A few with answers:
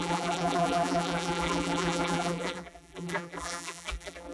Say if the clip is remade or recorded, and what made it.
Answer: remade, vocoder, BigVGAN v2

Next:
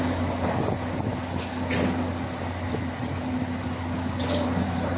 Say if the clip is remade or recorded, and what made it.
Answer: recorded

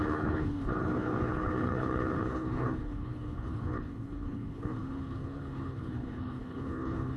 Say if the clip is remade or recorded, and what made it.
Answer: remade, codec, HILCodec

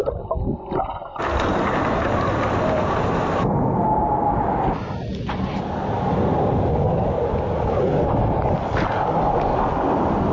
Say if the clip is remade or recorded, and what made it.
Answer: recorded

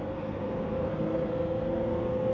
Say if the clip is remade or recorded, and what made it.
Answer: remade, codec, SNAC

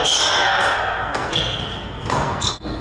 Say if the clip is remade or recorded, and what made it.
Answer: remade, codec, SNAC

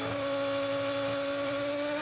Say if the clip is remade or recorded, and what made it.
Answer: recorded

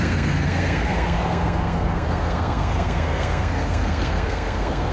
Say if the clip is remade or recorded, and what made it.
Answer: remade, codec, SNAC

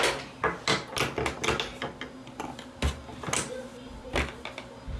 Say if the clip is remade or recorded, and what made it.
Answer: recorded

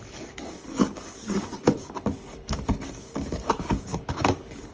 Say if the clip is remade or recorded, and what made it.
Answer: remade, codec, DAC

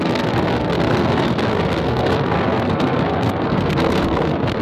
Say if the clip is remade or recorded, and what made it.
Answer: remade, codec, SNAC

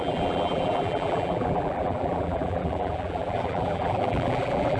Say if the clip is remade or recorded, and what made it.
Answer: remade, vocoder, BigVGAN v2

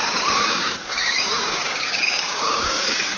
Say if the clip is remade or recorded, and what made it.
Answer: remade, codec, DAC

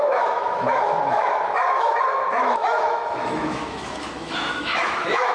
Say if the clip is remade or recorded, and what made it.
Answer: remade, autoencoder, DAC-VAE